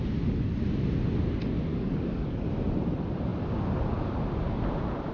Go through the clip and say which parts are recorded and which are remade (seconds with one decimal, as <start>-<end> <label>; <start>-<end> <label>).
0.0-1.7 recorded; 1.7-2.5 remade; 2.5-5.1 recorded